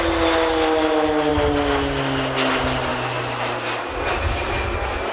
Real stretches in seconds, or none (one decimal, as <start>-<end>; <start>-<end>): 0.0-5.1